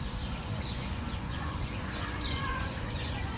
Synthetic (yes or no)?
yes